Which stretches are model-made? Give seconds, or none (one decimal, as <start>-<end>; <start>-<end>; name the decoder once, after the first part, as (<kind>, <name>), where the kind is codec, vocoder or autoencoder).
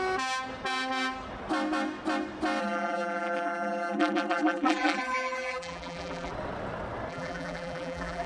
2.6-6.3 (vocoder, BigVGAN v2); 7.1-8.3